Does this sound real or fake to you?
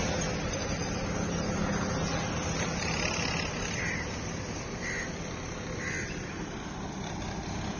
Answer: real